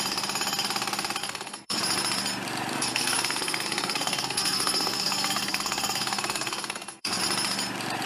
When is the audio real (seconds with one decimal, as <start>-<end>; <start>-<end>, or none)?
0.0-1.2; 1.8-2.7; 7.2-8.1

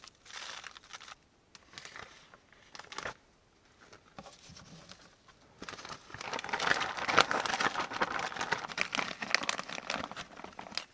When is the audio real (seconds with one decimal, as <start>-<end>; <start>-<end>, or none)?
0.0-10.9